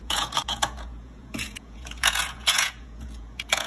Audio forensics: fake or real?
fake